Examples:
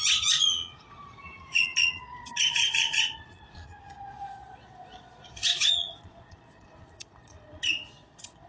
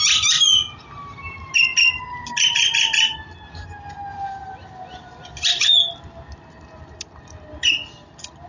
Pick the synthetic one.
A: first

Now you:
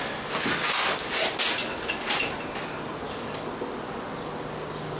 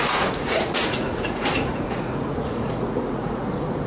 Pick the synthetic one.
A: second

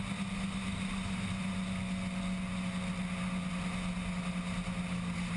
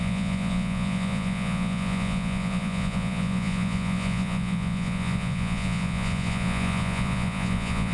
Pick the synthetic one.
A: second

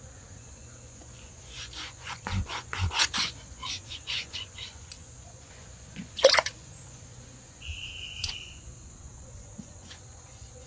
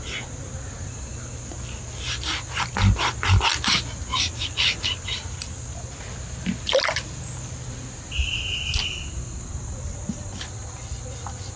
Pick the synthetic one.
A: first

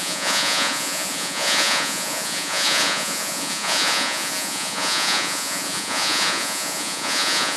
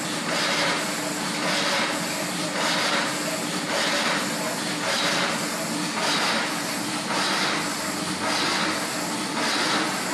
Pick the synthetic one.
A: first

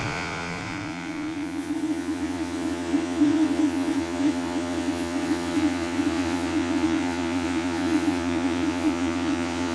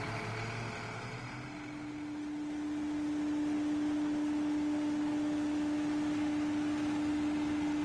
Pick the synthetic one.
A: first